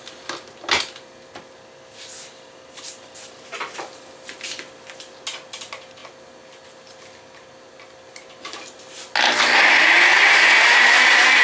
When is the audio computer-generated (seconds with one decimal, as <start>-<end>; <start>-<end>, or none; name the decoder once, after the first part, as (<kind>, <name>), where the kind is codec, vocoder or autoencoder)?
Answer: none

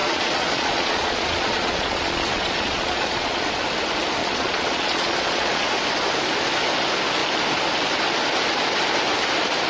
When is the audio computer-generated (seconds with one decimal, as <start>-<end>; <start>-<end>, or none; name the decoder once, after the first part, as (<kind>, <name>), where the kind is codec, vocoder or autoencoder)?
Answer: 0.0-3.5 (vocoder, Vocos); 4.2-5.7

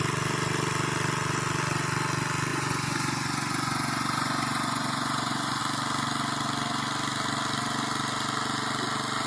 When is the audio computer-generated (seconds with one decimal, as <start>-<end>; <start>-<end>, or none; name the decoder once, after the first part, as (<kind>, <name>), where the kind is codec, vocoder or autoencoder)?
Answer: 2.5-5.6 (vocoder, Vocos)

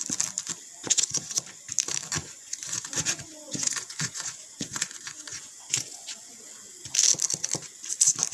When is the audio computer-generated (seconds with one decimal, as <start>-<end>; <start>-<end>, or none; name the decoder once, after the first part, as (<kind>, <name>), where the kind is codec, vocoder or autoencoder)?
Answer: 0.8-1.4 (vocoder, Vocos); 2.2-6.3